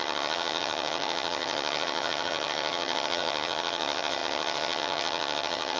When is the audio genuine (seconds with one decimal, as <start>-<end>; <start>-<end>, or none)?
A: none